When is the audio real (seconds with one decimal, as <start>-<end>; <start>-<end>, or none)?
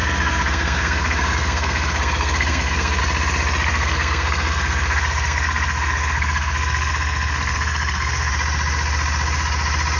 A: 3.0-3.7; 8.3-10.0